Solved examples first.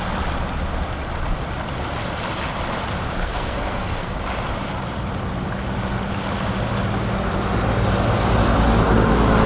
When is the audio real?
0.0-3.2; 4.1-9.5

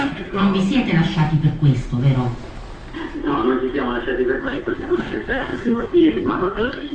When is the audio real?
0.4-4.4

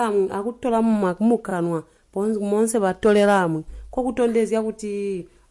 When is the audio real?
0.0-5.5

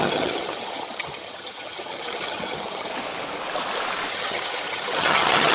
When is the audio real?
2.9-4.1

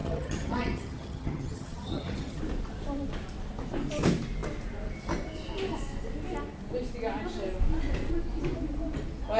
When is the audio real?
2.4-9.4

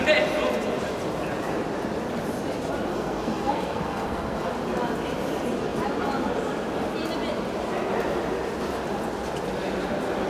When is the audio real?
0.0-2.9; 4.5-10.3